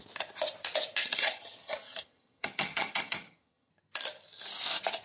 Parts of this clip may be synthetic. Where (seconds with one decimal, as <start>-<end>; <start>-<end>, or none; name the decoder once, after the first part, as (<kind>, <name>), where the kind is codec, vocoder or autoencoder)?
1.0-3.7 (vocoder, HiFi-GAN)